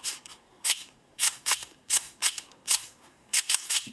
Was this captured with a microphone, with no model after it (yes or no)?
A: no